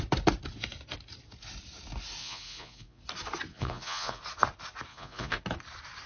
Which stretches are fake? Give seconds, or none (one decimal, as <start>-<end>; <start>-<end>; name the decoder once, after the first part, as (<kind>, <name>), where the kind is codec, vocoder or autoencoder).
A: 2.2-3.0 (vocoder, Vocos); 3.5-4.2; 4.9-5.4